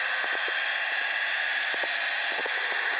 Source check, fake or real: real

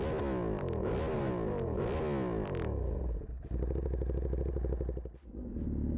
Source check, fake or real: real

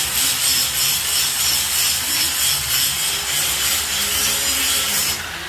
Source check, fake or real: real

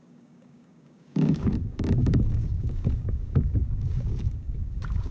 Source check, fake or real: fake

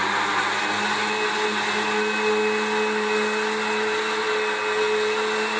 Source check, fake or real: real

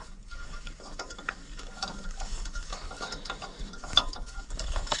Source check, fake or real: fake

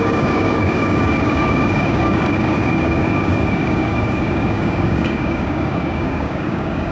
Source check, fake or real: fake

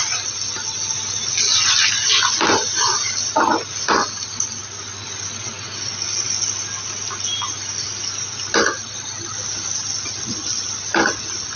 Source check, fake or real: real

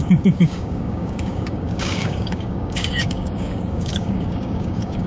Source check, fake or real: fake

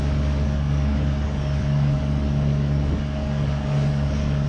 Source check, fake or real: fake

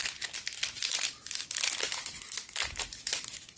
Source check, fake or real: real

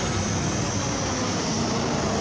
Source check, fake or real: real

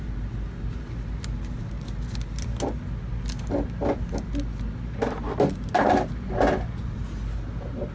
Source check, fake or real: real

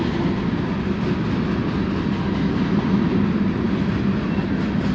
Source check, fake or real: real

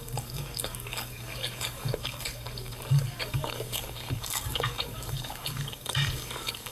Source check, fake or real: fake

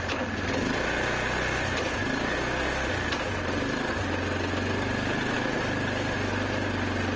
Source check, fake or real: real